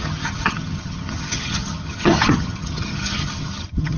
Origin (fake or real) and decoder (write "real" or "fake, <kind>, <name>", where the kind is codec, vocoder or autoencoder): fake, vocoder, HiFi-GAN